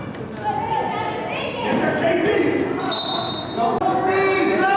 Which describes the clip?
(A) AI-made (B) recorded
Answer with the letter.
B